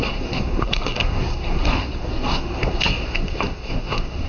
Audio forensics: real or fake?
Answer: fake